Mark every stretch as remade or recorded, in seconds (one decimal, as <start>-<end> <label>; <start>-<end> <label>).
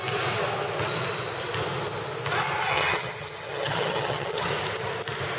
0.0-2.6 recorded; 2.6-4.5 remade; 4.5-5.4 recorded